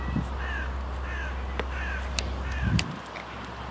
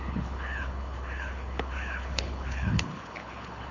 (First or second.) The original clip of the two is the first